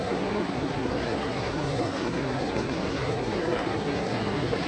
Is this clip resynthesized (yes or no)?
yes